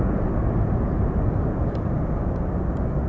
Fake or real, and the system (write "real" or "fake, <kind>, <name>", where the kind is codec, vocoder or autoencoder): real